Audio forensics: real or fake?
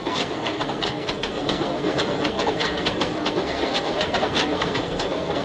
fake